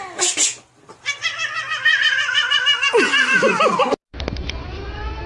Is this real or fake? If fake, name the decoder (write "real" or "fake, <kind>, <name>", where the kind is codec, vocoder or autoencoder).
real